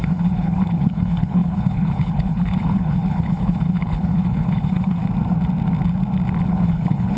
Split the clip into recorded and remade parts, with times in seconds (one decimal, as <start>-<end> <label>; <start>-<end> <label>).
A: 0.0-5.0 remade; 5.0-6.5 recorded; 6.5-7.2 remade